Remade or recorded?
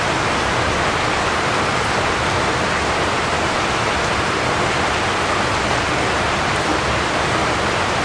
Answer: recorded